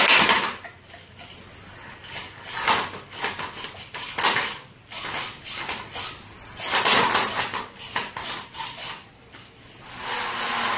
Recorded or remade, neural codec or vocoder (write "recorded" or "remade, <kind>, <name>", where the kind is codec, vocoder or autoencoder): recorded